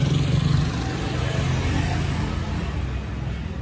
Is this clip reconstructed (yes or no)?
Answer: no